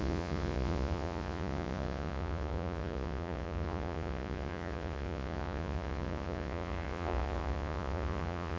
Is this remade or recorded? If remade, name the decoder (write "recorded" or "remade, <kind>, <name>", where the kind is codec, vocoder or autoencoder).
remade, vocoder, Vocos